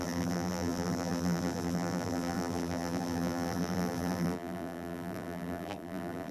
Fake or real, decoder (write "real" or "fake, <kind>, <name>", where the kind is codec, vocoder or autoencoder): fake, vocoder, BigVGAN v2